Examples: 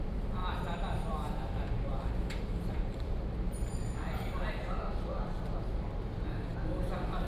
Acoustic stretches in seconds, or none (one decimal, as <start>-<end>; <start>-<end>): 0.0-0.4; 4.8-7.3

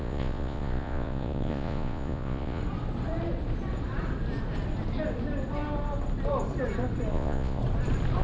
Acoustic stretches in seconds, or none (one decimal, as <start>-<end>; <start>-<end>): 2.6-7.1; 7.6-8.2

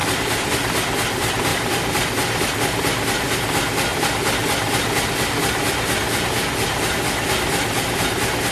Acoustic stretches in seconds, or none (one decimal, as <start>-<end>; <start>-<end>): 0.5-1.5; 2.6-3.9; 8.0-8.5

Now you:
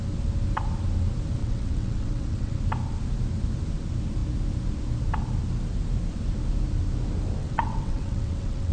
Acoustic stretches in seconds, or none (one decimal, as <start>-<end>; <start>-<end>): 0.0-1.4; 2.6-7.4

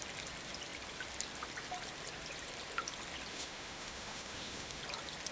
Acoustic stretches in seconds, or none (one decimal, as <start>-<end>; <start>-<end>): 0.0-3.3; 4.8-5.3

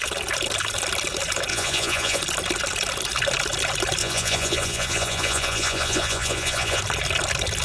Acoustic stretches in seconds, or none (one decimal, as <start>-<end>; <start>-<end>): 0.0-1.5; 2.2-4.0; 6.8-7.6

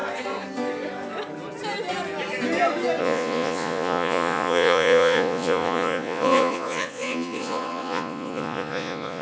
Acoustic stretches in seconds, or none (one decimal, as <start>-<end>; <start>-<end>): 0.0-3.0